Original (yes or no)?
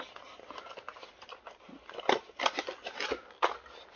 yes